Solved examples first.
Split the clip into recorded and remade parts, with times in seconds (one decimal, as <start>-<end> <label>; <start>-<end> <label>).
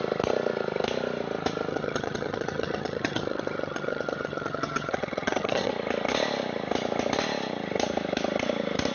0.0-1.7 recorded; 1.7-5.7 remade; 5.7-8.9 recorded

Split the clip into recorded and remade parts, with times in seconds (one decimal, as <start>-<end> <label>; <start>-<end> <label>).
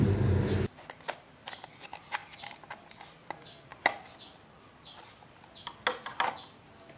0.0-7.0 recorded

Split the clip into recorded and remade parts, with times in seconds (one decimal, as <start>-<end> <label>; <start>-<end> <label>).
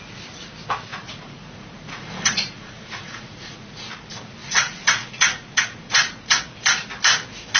0.0-0.9 recorded; 0.9-3.9 remade; 3.9-4.4 recorded; 4.4-6.4 remade; 6.4-7.6 recorded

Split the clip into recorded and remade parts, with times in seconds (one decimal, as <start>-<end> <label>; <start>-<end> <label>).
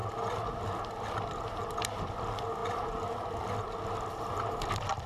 0.0-5.1 recorded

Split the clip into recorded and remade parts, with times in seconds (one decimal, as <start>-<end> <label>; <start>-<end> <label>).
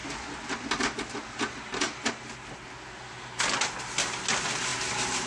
0.0-5.3 recorded